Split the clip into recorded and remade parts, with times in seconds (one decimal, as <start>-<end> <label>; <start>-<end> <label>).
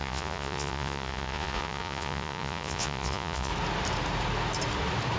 0.0-3.5 remade; 3.5-5.2 recorded